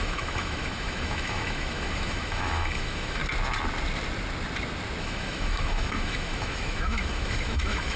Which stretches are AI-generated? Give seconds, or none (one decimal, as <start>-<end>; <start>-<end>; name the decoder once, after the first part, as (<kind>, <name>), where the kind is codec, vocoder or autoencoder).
0.0-3.2 (autoencoder, DAC-VAE); 5.0-8.0